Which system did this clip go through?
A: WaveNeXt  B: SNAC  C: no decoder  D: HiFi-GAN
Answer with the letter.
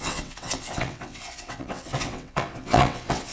A